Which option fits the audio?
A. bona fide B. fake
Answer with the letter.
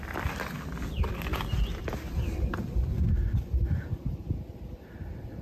A